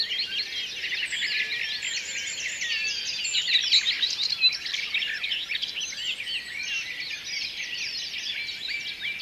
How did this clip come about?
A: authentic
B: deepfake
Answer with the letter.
A